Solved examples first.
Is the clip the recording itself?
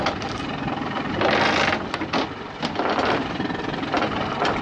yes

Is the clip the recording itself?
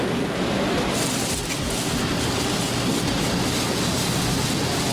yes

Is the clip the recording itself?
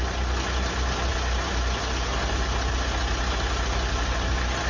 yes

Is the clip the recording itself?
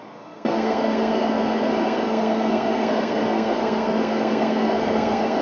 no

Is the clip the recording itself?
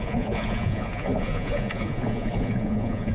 no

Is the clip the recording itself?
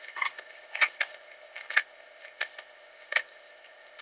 no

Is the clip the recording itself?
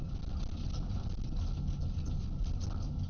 yes